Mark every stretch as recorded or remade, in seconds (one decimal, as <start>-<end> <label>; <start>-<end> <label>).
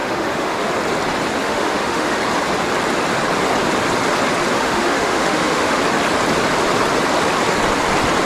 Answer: 0.0-0.7 remade; 0.7-1.4 recorded; 1.4-2.2 remade; 2.2-4.6 recorded; 4.6-5.8 remade; 5.8-8.3 recorded